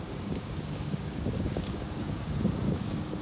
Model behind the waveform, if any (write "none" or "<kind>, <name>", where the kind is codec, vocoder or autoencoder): codec, DAC